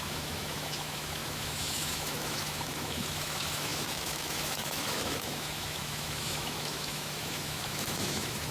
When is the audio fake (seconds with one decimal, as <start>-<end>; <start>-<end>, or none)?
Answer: 0.0-8.5

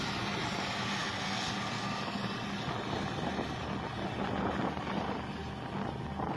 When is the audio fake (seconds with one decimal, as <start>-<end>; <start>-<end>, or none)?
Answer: none

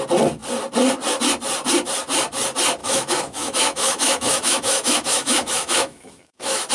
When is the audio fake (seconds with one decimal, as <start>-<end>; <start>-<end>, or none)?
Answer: 2.8-6.7